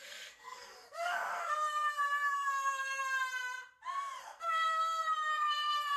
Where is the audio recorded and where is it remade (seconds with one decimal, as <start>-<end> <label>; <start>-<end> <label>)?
0.0-3.0 remade; 3.0-4.2 recorded; 4.2-6.0 remade